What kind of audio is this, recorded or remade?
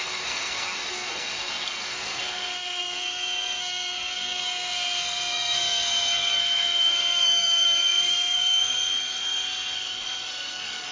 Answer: remade